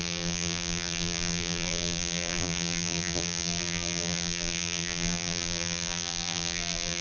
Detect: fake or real fake